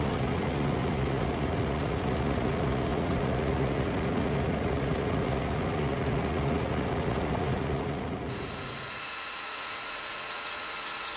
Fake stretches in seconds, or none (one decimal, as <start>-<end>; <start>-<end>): 0.0-11.2